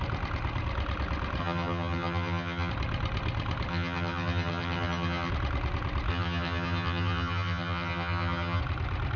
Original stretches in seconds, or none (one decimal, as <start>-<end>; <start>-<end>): 0.0-1.4; 2.7-3.7; 5.3-6.1; 8.6-9.2